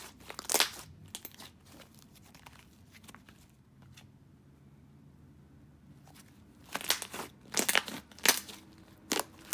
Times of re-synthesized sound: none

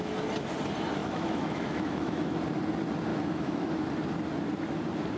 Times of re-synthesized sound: 1.0-2.4; 3.1-3.7

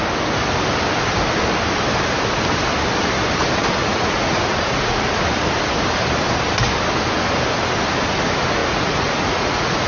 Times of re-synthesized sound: 3.8-5.2; 8.6-9.9

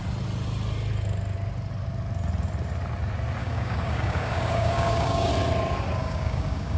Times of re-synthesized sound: 3.4-5.3; 6.0-6.8

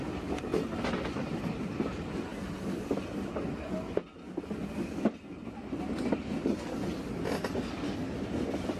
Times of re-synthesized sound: none